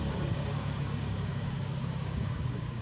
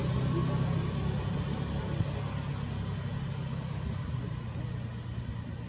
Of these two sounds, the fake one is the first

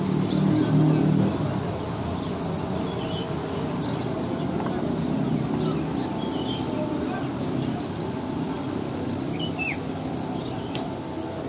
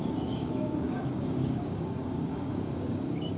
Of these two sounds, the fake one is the second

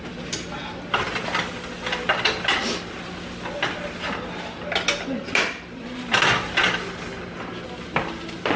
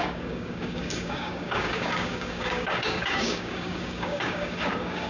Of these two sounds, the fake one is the second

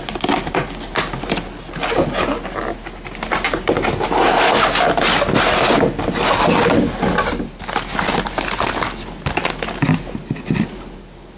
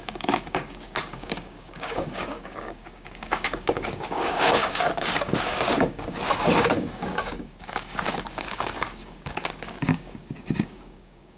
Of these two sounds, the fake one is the second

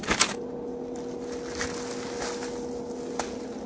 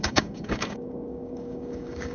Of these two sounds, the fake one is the second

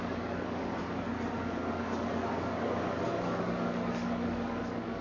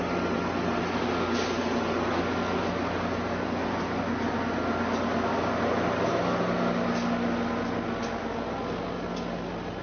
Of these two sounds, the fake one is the first